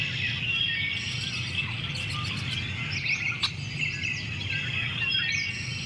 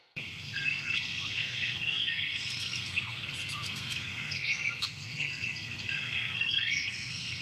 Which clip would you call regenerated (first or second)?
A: second